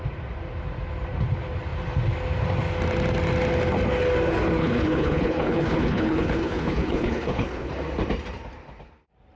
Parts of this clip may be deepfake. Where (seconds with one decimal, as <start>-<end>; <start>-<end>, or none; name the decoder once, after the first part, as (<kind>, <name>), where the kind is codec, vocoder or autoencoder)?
4.6-7.7 (codec, HILCodec)